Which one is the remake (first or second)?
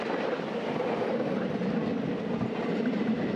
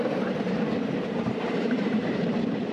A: second